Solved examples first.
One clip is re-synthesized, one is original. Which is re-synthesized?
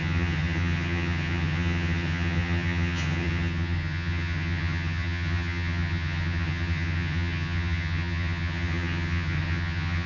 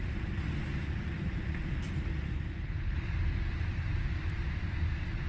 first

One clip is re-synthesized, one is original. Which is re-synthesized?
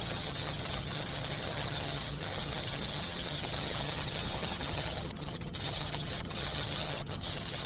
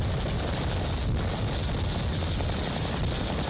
first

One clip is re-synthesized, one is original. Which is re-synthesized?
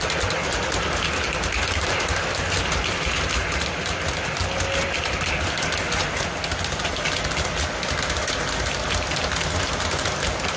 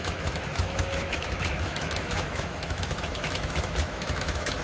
second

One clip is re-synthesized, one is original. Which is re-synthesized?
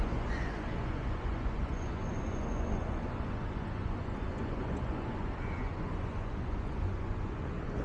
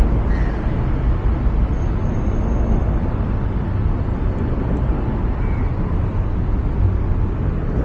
first